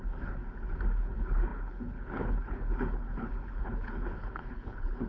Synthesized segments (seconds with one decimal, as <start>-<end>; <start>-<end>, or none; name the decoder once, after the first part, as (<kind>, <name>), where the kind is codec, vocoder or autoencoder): 0.0-0.4 (codec, HILCodec); 0.9-5.1